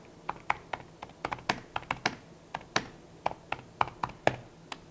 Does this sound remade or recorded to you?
recorded